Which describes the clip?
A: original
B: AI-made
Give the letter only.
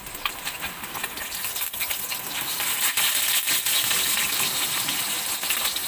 A